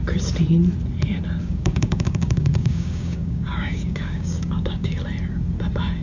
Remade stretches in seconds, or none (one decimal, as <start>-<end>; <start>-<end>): 1.4-5.0